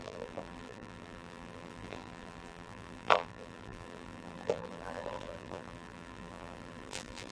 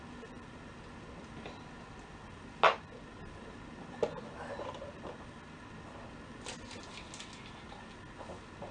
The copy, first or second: first